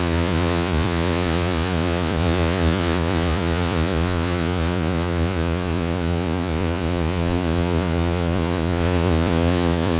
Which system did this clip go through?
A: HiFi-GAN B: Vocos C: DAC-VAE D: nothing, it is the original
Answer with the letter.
B